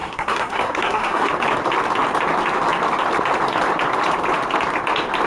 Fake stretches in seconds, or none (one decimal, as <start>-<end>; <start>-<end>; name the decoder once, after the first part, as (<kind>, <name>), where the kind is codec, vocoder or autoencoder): 0.0-1.3 (codec, SNAC)